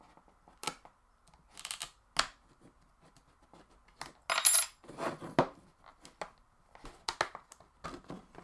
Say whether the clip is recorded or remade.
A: recorded